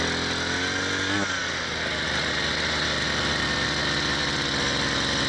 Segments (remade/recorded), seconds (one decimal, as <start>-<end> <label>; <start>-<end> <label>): 0.0-5.3 recorded

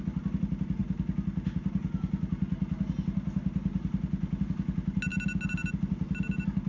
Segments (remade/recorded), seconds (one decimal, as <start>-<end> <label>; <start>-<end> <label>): 0.0-6.7 recorded

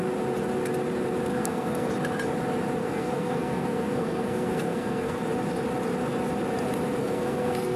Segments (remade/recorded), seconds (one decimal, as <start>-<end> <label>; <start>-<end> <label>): 0.0-1.3 recorded; 1.3-1.9 remade; 1.9-2.8 recorded; 2.8-5.2 remade; 5.2-7.0 recorded; 7.0-7.8 remade

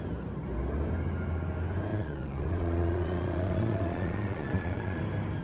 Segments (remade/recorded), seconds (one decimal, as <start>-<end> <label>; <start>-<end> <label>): 0.0-1.9 recorded; 1.9-5.0 remade; 5.0-5.4 recorded

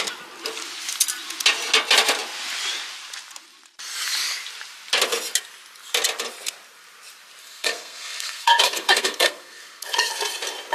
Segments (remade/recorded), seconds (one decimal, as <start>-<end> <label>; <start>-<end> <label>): 0.0-7.4 recorded; 7.4-10.1 remade; 10.1-10.7 recorded

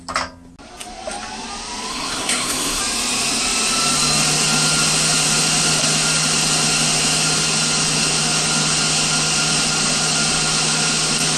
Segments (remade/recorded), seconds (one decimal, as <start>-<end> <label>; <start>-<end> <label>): 0.0-1.9 recorded; 1.9-2.8 remade; 2.8-11.4 recorded